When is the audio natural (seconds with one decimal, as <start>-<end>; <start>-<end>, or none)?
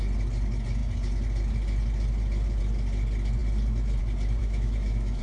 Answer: 0.0-4.4